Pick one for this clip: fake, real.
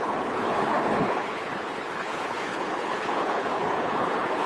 fake